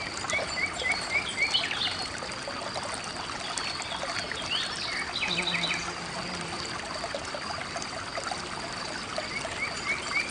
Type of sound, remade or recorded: recorded